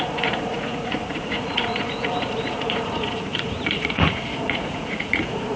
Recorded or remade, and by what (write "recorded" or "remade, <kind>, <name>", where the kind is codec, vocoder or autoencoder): remade, vocoder, Vocos